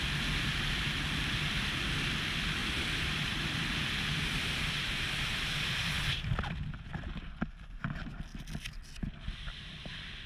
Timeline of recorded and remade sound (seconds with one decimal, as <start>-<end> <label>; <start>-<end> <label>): 0.0-2.6 recorded; 2.6-6.3 remade; 6.3-10.3 recorded